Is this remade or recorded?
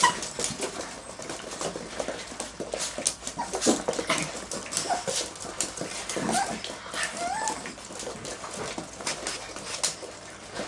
recorded